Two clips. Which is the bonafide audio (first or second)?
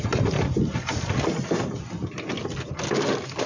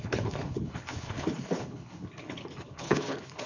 first